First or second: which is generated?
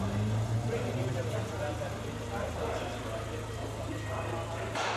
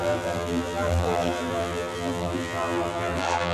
second